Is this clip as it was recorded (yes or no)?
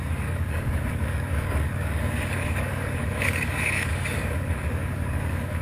no